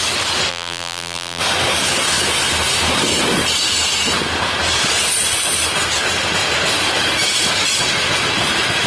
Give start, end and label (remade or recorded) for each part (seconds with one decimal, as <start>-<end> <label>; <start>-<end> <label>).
0.0-0.5 recorded; 0.5-1.4 remade; 1.4-8.9 recorded